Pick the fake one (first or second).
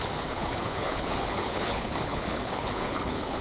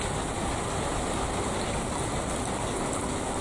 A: first